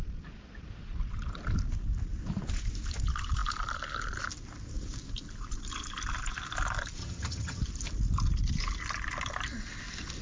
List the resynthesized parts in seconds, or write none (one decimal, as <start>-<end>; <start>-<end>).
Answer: 7.0-7.6